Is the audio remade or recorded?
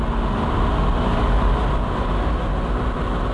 recorded